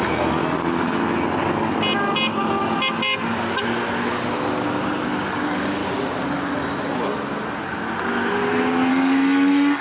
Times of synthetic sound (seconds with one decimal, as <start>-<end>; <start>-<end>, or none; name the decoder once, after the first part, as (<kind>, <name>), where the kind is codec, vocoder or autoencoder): 0.0-0.4 (codec, DAC); 5.3-5.8; 8.9-9.8